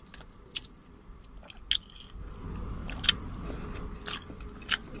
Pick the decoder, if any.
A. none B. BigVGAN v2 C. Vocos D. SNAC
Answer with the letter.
A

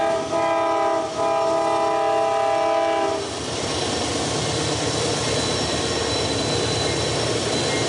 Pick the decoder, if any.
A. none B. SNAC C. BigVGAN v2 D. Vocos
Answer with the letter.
A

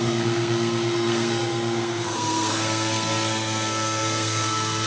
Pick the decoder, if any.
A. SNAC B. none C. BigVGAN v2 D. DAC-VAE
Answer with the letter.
A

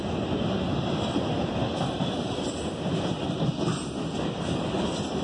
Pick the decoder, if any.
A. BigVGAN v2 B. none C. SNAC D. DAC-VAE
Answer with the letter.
B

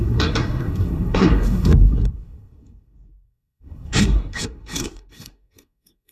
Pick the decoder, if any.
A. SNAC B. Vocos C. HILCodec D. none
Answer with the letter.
A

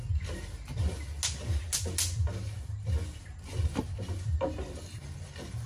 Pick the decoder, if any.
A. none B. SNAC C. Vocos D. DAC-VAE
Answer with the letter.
A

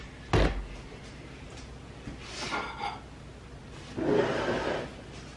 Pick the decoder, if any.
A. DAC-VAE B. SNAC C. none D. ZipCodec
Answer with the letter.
C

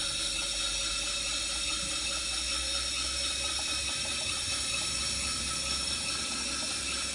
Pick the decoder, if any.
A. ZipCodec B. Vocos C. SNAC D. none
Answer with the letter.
D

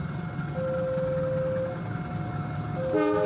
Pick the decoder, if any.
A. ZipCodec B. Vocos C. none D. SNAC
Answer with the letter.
C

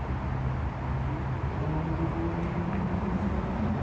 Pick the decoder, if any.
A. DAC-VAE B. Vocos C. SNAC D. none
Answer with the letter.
D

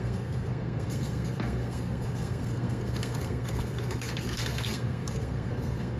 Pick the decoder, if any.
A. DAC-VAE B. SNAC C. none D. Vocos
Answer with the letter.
B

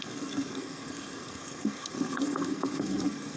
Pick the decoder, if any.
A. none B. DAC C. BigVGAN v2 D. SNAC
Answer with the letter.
D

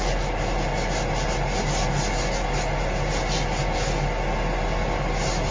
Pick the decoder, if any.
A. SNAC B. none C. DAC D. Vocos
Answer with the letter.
B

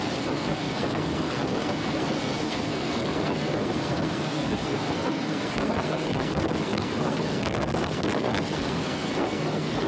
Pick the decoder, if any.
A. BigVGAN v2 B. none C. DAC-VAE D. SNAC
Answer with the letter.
D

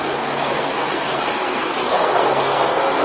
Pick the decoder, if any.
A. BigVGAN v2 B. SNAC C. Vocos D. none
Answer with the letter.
B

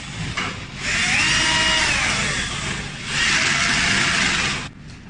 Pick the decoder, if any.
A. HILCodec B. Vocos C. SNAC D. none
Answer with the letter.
D